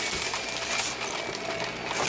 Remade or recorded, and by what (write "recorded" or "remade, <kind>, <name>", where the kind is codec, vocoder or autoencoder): recorded